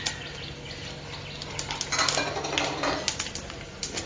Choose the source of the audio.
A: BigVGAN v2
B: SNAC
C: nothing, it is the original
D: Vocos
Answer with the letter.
C